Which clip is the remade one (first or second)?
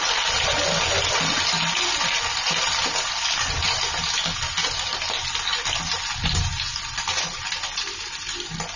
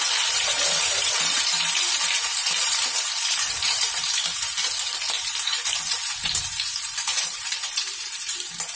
second